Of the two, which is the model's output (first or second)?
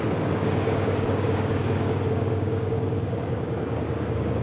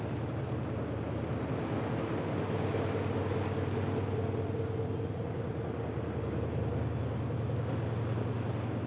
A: first